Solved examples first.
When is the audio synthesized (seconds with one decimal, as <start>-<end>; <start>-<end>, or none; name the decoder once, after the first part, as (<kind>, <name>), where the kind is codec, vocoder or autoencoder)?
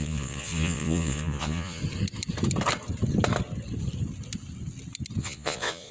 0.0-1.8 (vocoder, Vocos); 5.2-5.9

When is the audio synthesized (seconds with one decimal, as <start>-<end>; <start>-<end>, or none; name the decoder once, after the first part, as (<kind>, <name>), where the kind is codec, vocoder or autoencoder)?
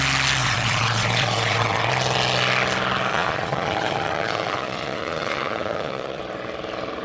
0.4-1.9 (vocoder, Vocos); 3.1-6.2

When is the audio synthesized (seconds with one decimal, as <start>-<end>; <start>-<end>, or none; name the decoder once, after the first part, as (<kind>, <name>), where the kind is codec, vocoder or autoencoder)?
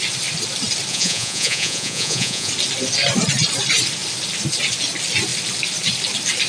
0.9-2.5 (vocoder, Vocos)